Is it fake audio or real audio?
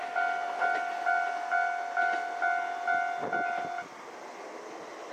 real